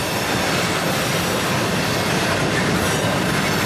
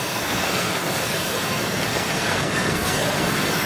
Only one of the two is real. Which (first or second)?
first